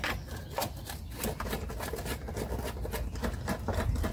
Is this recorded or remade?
recorded